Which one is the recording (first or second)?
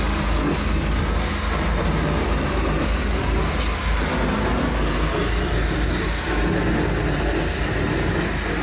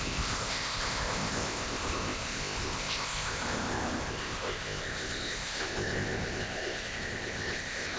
first